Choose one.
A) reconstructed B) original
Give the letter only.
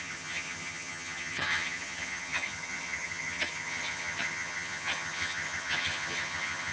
A